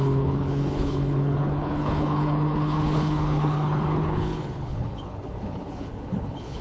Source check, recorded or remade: remade